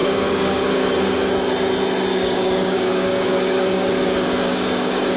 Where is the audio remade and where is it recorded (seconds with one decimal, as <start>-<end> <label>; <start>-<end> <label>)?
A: 0.0-0.9 remade; 0.9-2.1 recorded; 2.1-5.2 remade